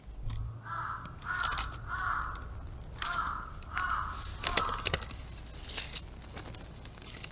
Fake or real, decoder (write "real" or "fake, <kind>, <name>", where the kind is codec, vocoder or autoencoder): real